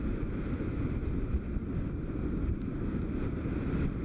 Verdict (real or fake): real